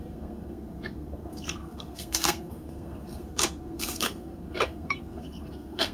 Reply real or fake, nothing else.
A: fake